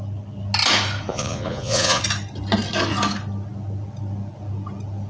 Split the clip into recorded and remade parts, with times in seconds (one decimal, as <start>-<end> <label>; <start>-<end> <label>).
0.0-1.1 recorded; 1.1-2.0 remade; 2.0-5.1 recorded